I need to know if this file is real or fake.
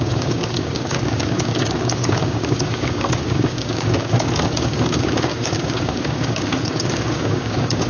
fake